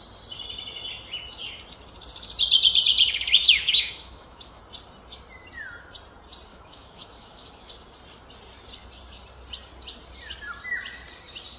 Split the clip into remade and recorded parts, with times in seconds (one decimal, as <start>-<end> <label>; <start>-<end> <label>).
0.0-3.4 recorded; 3.4-4.6 remade; 4.6-6.5 recorded; 6.5-7.7 remade; 7.7-11.6 recorded